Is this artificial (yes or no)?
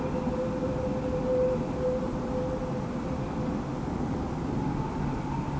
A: no